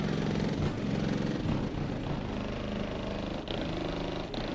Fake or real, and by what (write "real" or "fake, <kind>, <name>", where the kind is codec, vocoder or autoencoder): real